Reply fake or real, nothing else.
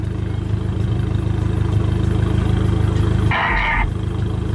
real